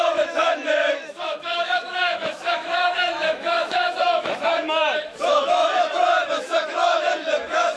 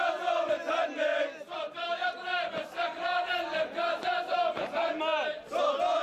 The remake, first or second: first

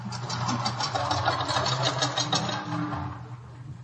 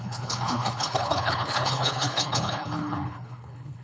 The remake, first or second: second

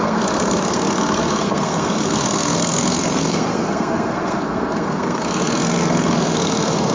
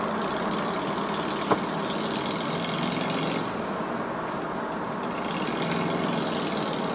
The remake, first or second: first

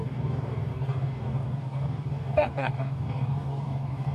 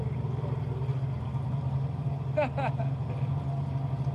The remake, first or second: first